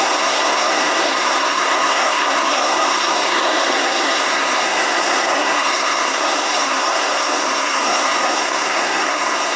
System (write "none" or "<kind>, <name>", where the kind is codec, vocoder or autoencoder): codec, SNAC